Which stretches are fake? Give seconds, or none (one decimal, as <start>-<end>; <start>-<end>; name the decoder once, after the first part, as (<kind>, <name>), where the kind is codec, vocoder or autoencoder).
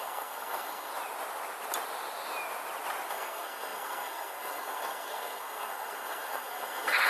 0.0-0.9 (codec, SNAC); 3.1-7.1